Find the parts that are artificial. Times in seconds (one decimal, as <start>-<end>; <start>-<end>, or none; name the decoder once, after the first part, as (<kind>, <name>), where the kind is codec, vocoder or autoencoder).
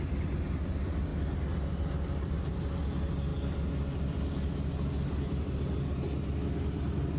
none